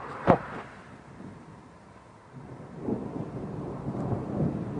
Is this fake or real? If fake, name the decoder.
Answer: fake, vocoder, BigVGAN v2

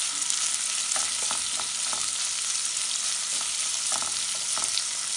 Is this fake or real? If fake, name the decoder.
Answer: real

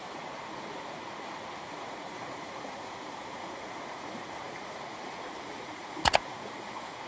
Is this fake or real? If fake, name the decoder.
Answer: fake, vocoder, Vocos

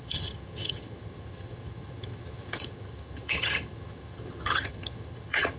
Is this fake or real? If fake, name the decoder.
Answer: fake, vocoder, HiFi-GAN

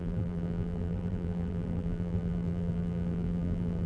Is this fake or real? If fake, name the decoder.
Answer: fake, vocoder, BigVGAN v2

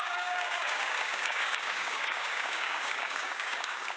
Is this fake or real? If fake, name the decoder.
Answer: fake, codec, DAC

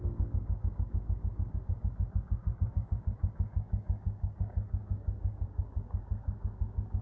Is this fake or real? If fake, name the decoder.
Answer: fake, codec, DAC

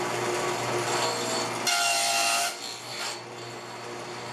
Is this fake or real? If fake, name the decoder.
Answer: real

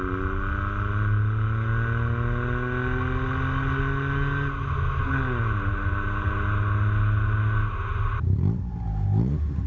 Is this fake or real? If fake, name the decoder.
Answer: real